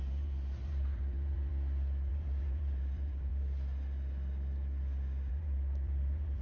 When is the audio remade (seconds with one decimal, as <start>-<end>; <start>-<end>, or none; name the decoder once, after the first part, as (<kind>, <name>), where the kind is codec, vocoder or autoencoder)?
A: 0.0-1.5 (vocoder, BigVGAN v2); 2.1-3.3; 5.3-6.4